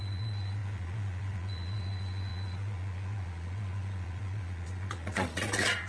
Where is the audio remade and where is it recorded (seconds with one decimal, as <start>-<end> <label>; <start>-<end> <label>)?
0.0-5.9 remade